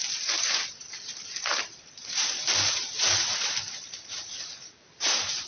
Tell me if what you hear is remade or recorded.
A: remade